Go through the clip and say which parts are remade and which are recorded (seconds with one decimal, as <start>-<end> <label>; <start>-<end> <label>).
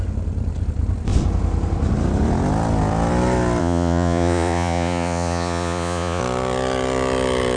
0.0-3.6 recorded; 3.6-6.2 remade; 6.2-7.6 recorded